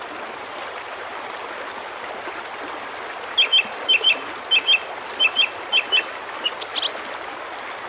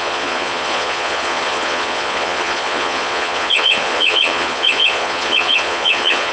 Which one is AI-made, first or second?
second